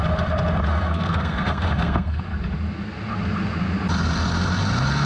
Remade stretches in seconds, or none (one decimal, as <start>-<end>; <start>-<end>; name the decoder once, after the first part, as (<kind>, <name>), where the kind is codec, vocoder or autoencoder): 0.7-2.2 (codec, SNAC)